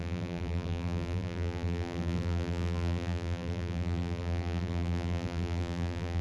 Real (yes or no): no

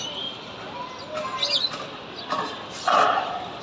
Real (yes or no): yes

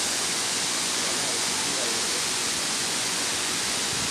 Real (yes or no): no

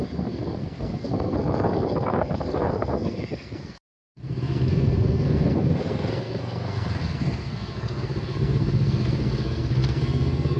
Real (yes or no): no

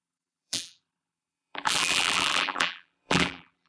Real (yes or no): no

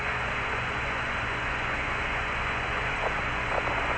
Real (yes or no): no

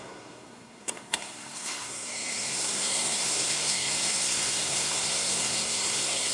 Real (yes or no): no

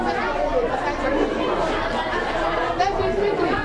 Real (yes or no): yes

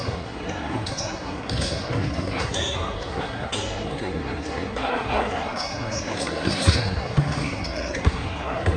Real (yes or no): no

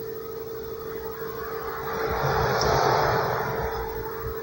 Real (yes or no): yes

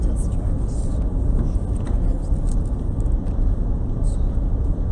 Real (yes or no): yes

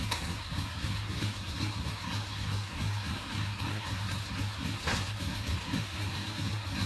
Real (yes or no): no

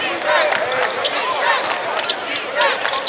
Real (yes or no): yes